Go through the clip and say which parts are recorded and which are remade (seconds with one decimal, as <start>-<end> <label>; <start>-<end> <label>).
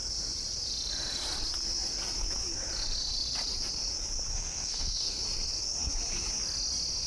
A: 0.0-4.3 recorded; 4.3-5.2 remade; 5.2-7.1 recorded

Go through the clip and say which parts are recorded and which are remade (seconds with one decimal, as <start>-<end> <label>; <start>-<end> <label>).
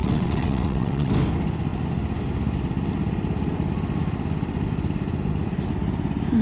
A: 0.0-1.1 remade; 1.1-6.4 recorded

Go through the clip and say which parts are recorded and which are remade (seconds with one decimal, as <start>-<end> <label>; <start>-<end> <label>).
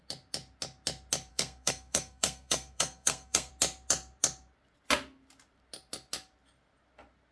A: 0.0-1.3 recorded; 1.3-3.5 remade; 3.5-7.3 recorded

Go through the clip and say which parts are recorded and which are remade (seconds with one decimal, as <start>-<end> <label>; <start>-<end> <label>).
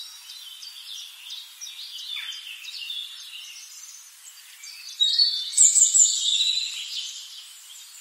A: 0.0-3.0 recorded; 3.0-4.2 remade; 4.2-8.0 recorded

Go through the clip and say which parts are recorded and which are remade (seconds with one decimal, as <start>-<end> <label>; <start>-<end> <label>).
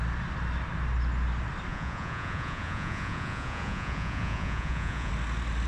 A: 0.0-1.7 recorded; 1.7-5.1 remade; 5.1-5.7 recorded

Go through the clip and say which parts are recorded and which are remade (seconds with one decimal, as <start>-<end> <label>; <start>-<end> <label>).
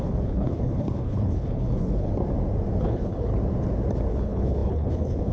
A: 0.0-2.1 remade; 2.1-2.8 recorded; 2.8-3.3 remade; 3.3-4.1 recorded; 4.1-5.3 remade